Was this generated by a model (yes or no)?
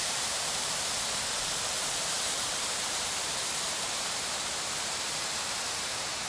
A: yes